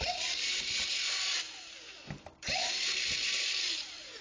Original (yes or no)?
no